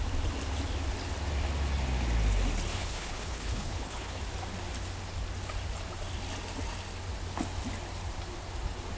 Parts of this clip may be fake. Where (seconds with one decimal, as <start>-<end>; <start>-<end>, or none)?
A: 2.7-4.2